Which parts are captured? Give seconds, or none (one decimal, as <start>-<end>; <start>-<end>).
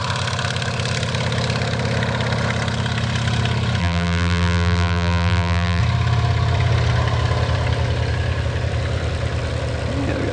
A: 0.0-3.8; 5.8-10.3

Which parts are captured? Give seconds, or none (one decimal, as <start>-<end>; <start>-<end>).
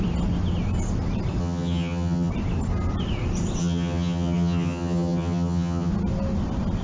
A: 0.0-1.4; 2.3-3.6; 5.9-6.8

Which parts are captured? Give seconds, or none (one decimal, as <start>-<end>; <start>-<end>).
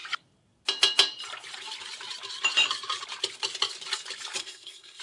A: 0.0-4.4